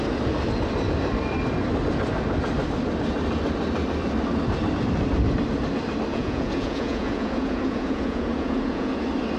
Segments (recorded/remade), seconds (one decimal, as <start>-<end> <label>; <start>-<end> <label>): 0.0-6.1 recorded; 6.1-8.9 remade; 8.9-9.4 recorded